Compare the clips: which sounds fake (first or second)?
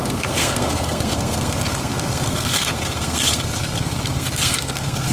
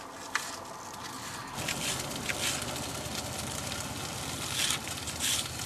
first